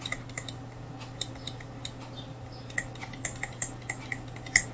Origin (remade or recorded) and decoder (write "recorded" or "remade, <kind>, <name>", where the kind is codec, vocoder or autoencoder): recorded